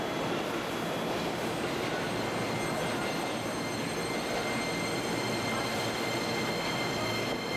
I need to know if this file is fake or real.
real